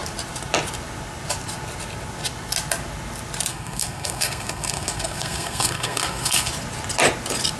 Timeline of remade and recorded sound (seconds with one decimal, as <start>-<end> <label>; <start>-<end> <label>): 0.0-3.5 recorded; 3.5-6.5 remade; 6.5-7.6 recorded